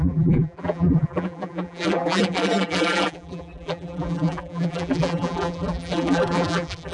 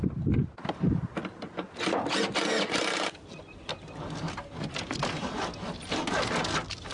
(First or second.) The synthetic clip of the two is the first